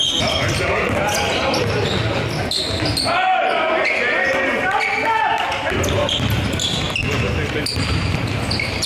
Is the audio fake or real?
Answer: real